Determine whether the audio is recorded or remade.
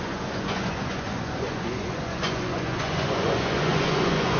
remade